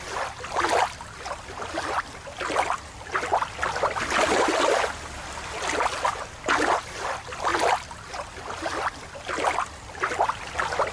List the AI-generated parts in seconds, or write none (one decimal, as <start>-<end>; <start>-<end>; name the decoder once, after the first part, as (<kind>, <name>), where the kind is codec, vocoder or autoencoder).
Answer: none